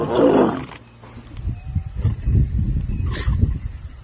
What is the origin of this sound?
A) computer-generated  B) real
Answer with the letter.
B